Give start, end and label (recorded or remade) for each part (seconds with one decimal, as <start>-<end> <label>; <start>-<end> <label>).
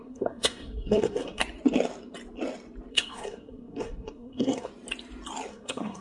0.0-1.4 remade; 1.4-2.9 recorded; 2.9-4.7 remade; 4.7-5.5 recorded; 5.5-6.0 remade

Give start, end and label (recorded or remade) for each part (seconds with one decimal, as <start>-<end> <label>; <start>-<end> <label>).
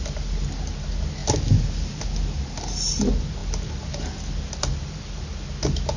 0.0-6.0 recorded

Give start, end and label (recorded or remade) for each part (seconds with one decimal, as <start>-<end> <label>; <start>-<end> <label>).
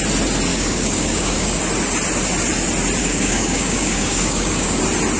0.0-0.5 recorded; 0.5-1.6 remade; 1.6-3.0 recorded; 3.0-4.8 remade; 4.8-5.2 recorded